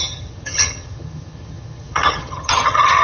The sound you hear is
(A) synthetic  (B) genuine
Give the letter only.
A